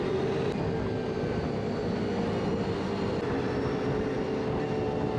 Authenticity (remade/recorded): recorded